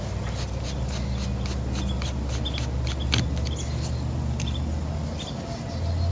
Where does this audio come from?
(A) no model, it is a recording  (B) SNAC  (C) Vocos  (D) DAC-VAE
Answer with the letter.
A